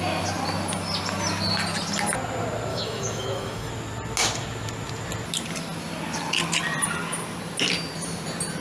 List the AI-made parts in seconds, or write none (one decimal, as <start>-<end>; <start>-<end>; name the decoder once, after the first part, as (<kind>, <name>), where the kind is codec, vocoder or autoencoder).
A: 2.7-3.7 (autoencoder, DAC-VAE)